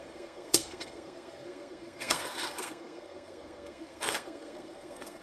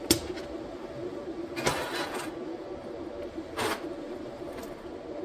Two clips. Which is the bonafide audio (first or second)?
second